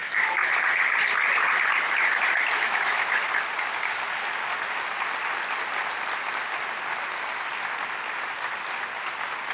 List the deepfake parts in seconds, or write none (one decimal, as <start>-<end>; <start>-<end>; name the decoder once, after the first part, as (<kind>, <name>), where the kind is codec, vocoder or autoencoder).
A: 0.0-0.5 (autoencoder, DAC-VAE); 2.5-3.1